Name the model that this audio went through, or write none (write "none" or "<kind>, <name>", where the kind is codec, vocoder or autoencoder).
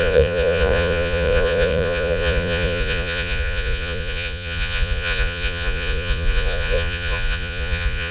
vocoder, Vocos